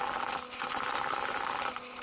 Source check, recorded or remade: recorded